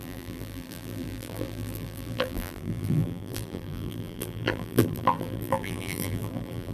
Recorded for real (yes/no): no